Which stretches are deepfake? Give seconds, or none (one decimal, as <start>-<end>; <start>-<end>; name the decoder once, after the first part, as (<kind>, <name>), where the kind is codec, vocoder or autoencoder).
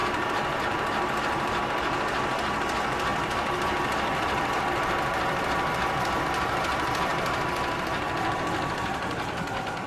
0.0-0.6 (vocoder, BigVGAN v2); 3.1-6.2